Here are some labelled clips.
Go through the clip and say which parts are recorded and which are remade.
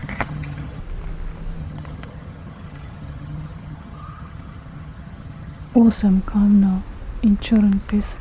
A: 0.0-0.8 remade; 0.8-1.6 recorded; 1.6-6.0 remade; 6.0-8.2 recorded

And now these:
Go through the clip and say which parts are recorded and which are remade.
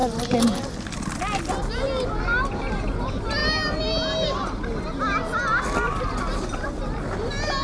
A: 0.0-7.6 recorded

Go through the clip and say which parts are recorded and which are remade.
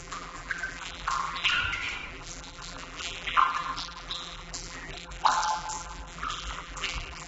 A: 0.0-1.5 remade; 1.5-2.1 recorded; 2.1-7.3 remade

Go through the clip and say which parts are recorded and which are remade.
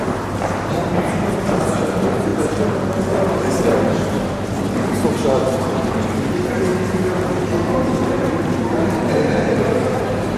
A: 0.0-2.3 remade; 2.3-3.0 recorded; 3.0-6.7 remade; 6.7-7.4 recorded; 7.4-10.4 remade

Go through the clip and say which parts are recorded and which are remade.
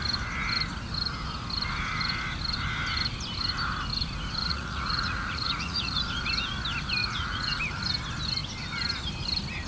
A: 0.0-4.4 recorded; 4.4-6.0 remade; 6.0-7.0 recorded; 7.0-7.6 remade; 7.6-9.7 recorded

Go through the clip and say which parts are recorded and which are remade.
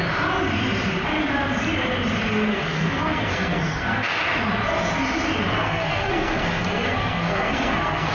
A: 0.0-2.5 recorded; 2.5-4.2 remade; 4.2-5.5 recorded; 5.5-8.1 remade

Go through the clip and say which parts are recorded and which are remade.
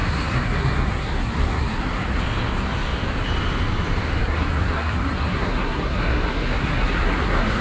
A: 0.0-2.2 remade; 2.2-4.2 recorded; 4.2-7.6 remade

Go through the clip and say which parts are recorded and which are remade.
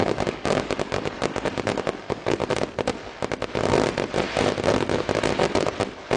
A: 0.0-2.4 remade; 2.4-6.2 recorded